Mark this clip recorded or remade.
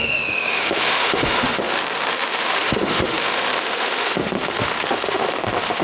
remade